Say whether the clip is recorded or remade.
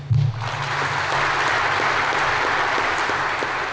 recorded